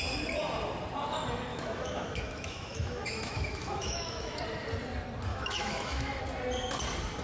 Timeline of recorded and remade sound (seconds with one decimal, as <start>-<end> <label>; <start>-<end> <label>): 0.0-1.5 recorded; 1.5-4.4 remade; 4.4-5.3 recorded; 5.3-6.2 remade; 6.2-7.2 recorded